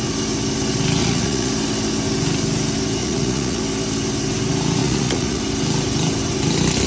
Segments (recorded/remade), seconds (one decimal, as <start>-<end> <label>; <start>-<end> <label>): 0.0-1.0 recorded; 1.0-1.5 remade; 1.5-3.0 recorded; 3.0-3.6 remade; 3.6-4.8 recorded; 4.8-5.4 remade; 5.4-6.9 recorded